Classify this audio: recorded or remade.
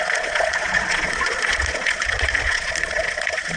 remade